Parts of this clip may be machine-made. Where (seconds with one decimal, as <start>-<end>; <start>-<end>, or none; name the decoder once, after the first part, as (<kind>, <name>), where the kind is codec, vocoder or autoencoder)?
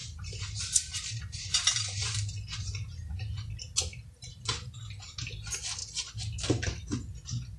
0.0-3.5 (vocoder, BigVGAN v2); 3.9-4.7